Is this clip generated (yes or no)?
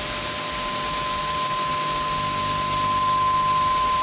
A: no